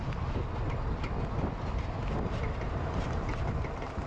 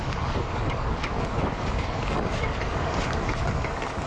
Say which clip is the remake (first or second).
second